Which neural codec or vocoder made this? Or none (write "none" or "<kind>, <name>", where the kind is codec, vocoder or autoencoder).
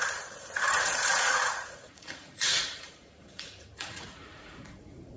vocoder, Vocos